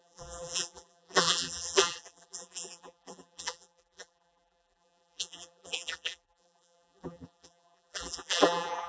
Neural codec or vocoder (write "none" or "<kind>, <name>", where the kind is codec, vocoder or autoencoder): vocoder, BigVGAN v2